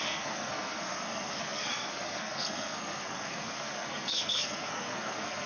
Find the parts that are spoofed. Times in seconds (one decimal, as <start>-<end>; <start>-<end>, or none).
0.0-5.5

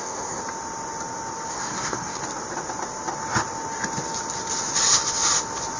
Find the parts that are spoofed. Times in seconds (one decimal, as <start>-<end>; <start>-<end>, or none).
0.0-0.4; 1.5-2.2